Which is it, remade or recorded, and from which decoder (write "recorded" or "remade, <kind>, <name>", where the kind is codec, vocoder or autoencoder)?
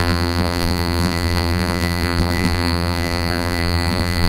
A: remade, vocoder, BigVGAN v2